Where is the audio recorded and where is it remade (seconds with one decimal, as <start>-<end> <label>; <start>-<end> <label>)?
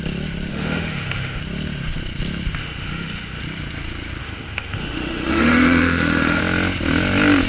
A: 0.0-0.5 recorded; 0.5-1.4 remade; 1.4-2.6 recorded; 2.6-3.4 remade; 3.4-4.2 recorded; 4.2-6.4 remade; 6.4-7.5 recorded